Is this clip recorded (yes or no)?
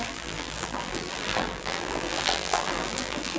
no